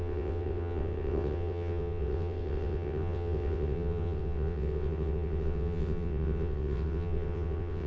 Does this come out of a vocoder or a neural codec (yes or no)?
yes